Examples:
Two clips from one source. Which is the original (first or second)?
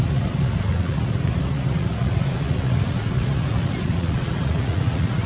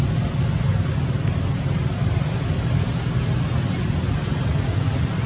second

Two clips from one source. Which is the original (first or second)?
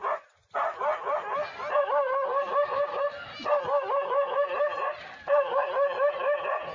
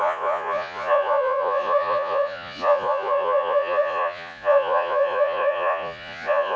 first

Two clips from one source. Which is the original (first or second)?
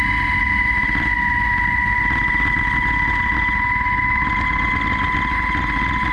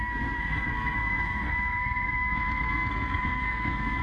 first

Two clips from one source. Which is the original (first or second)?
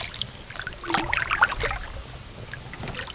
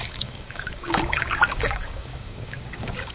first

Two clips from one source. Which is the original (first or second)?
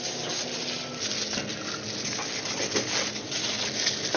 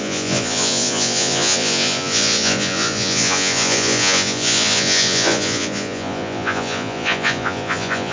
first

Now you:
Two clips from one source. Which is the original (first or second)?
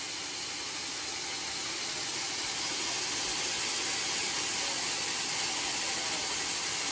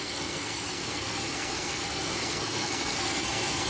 first